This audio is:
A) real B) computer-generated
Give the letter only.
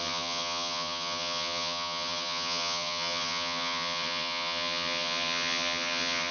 B